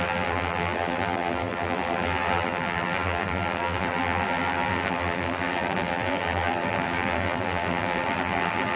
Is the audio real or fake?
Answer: fake